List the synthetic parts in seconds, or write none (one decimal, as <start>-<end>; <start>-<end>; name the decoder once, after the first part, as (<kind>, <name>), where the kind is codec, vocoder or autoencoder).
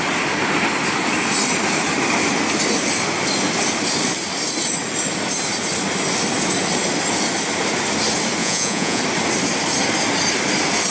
8.4-9.0 (vocoder, Vocos)